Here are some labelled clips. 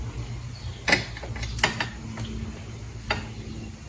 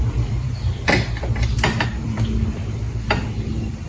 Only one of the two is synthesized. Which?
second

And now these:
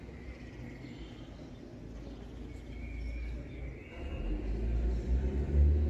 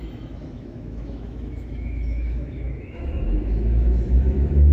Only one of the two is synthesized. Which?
second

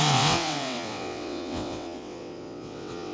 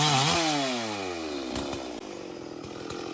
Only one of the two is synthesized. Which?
first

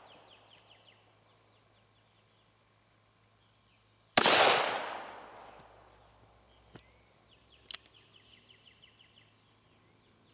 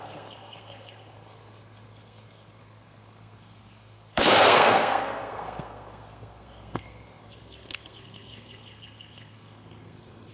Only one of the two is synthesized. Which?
second